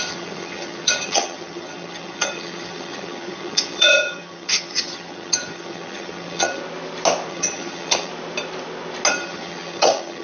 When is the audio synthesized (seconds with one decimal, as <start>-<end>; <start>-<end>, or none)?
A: 0.0-6.6; 7.3-8.1; 9.1-10.2